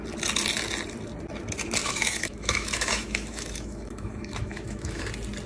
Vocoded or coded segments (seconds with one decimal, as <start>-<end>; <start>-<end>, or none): 1.8-5.1